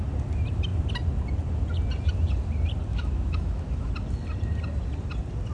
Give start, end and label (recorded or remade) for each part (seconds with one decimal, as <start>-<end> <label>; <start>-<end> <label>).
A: 0.0-2.9 recorded; 2.9-3.9 remade; 3.9-5.5 recorded